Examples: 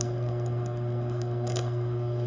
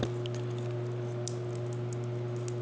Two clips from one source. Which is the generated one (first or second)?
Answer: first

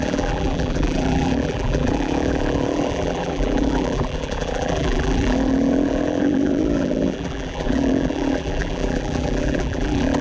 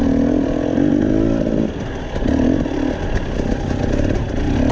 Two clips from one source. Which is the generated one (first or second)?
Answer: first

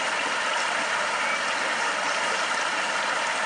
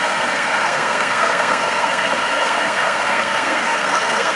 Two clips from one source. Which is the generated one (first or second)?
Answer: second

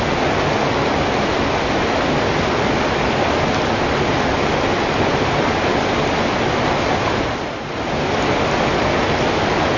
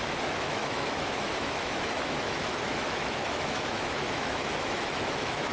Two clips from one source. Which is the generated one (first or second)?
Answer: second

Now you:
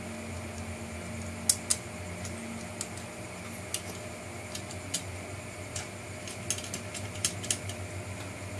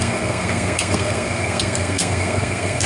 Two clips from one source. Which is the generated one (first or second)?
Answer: second